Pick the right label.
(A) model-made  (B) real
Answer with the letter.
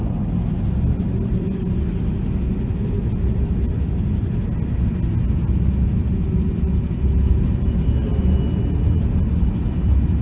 B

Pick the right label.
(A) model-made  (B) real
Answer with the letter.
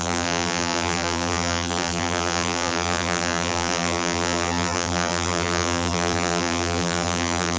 A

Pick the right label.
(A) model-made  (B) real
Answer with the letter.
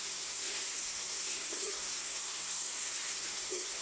A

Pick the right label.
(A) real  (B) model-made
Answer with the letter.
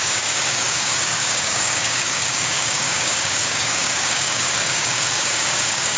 B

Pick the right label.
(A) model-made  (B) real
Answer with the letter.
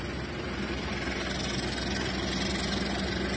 B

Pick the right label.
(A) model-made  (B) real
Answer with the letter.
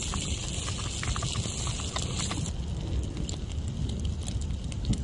B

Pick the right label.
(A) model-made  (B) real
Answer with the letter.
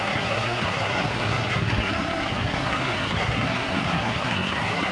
A